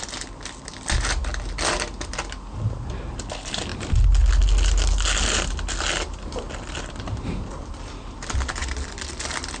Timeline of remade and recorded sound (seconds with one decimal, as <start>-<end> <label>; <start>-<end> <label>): 0.0-9.6 recorded